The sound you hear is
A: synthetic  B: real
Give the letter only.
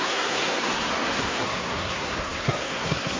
A